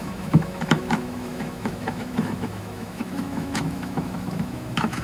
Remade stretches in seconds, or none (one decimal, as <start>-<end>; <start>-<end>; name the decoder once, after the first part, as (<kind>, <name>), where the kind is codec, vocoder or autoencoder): 0.0-5.0 (autoencoder, DAC-VAE)